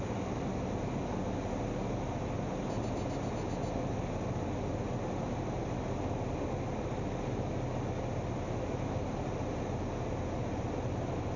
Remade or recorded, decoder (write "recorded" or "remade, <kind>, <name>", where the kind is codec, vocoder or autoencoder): recorded